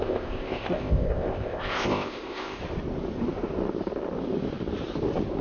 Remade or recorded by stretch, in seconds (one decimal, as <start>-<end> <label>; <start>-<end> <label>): 0.0-2.6 remade; 2.6-5.4 recorded